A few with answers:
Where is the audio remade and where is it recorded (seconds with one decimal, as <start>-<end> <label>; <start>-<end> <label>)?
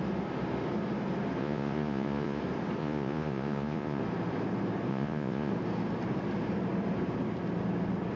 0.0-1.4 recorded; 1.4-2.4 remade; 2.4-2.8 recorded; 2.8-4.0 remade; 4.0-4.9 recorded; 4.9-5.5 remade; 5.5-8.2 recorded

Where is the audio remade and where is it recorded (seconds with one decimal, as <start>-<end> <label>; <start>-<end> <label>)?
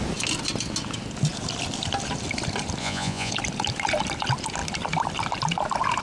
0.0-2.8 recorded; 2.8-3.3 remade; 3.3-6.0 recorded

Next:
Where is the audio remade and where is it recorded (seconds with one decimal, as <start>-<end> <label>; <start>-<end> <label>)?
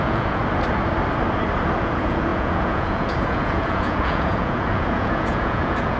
0.0-0.4 remade; 0.4-1.8 recorded; 1.8-6.0 remade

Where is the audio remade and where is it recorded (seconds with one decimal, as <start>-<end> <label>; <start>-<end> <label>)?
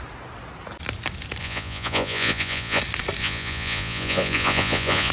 0.0-1.4 recorded; 1.4-2.8 remade; 2.8-3.2 recorded; 3.2-5.1 remade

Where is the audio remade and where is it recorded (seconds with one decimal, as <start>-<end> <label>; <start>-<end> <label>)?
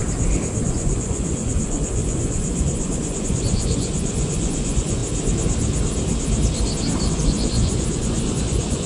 0.0-0.6 recorded; 0.6-5.0 remade; 5.0-7.1 recorded; 7.1-8.9 remade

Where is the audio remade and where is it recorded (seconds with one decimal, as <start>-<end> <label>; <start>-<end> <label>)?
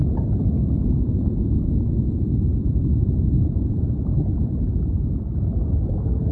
0.0-3.8 remade; 3.8-6.3 recorded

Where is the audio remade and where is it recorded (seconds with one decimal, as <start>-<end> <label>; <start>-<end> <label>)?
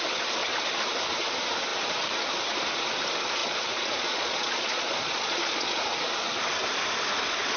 0.0-3.4 recorded; 3.4-5.8 remade; 5.8-7.6 recorded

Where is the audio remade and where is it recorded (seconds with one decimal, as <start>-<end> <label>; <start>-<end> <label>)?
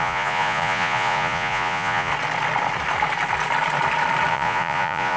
0.0-2.1 remade; 2.1-4.3 recorded; 4.3-5.2 remade